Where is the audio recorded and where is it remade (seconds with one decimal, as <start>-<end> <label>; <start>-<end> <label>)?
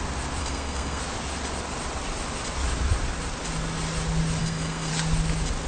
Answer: 0.0-0.4 recorded; 0.4-1.0 remade; 1.0-4.4 recorded; 4.4-4.9 remade; 4.9-5.7 recorded